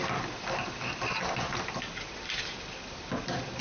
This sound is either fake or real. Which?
real